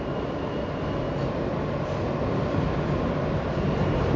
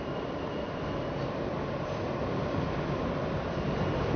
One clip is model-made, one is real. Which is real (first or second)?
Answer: first